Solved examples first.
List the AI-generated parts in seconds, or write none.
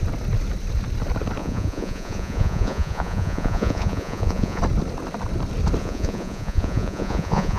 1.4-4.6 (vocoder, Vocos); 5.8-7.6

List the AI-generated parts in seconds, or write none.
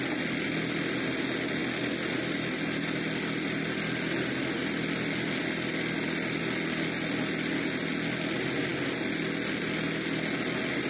none